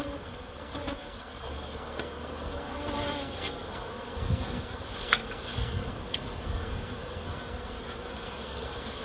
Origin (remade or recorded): remade